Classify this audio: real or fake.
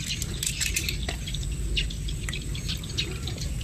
real